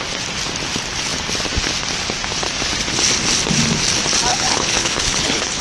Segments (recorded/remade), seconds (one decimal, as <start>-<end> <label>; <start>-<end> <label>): 0.0-4.3 recorded; 4.3-5.6 remade